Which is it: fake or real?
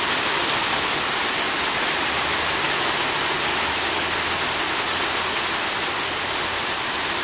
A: real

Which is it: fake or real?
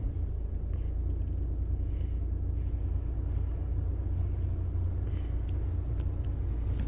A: real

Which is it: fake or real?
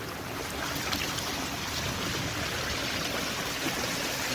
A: real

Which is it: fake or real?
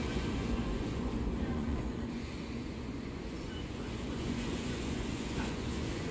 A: fake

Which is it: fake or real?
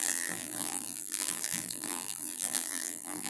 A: fake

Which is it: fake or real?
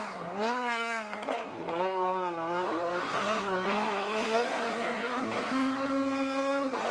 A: fake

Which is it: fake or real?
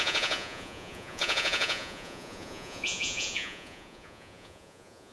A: fake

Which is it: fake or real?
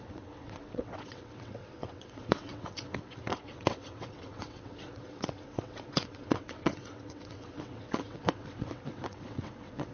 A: fake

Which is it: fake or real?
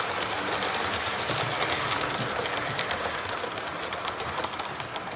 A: real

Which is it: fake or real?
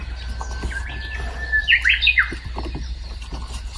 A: real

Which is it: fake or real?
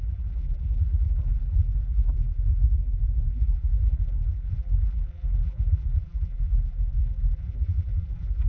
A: fake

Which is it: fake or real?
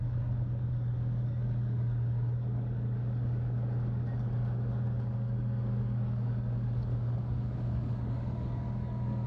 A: fake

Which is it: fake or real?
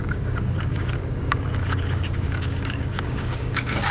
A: fake